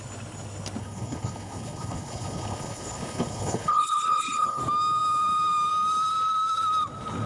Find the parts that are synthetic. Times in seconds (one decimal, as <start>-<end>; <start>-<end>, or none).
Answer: 0.8-4.6